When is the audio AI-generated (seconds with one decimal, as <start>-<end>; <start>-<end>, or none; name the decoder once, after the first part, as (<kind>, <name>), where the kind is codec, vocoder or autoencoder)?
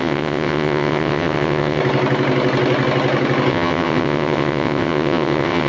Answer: 0.0-1.8 (vocoder, WaveNeXt); 3.5-5.7